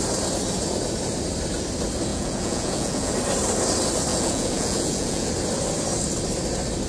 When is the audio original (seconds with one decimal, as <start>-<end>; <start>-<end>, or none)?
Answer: 0.0-2.1; 3.1-4.1; 5.3-6.9